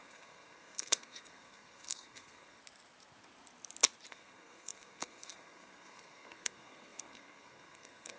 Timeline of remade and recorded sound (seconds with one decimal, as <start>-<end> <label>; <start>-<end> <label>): 0.0-2.6 remade; 2.6-4.1 recorded; 4.1-8.2 remade